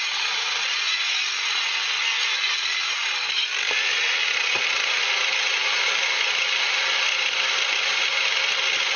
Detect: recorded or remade recorded